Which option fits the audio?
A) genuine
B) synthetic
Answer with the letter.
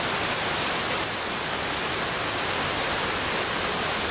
A